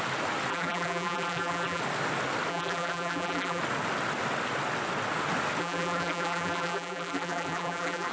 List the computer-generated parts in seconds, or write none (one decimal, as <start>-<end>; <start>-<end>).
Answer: 0.5-1.8; 2.5-3.6; 5.6-8.1

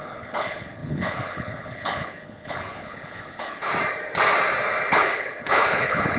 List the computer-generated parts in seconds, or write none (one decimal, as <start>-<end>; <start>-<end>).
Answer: 0.0-3.7; 4.9-6.2